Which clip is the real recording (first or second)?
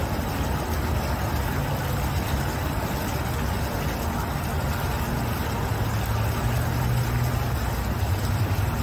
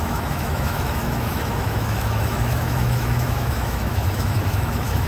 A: first